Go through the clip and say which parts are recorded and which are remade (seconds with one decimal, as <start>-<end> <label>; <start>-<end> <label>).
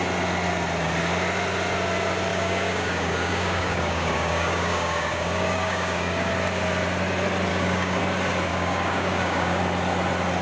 0.0-2.3 recorded; 2.3-6.3 remade; 6.3-7.5 recorded; 7.5-8.0 remade; 8.0-8.5 recorded; 8.5-9.6 remade; 9.6-10.4 recorded